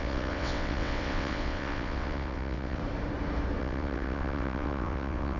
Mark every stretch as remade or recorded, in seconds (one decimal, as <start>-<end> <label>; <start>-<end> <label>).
0.0-2.8 remade; 2.8-3.6 recorded; 3.6-5.4 remade